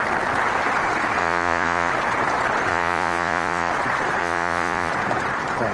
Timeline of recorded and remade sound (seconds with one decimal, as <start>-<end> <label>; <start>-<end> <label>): 0.0-1.2 recorded; 1.2-1.9 remade; 1.9-2.7 recorded; 2.7-3.7 remade; 3.7-4.2 recorded; 4.2-4.9 remade; 4.9-5.7 recorded